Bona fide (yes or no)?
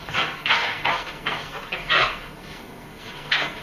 no